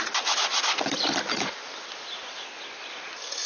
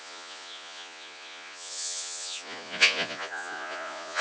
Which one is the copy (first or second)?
second